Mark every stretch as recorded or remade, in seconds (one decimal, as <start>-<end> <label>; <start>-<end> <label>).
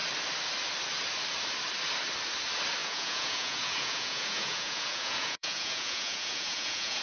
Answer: 0.0-2.8 recorded; 2.8-7.0 remade